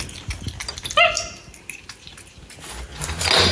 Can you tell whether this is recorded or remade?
recorded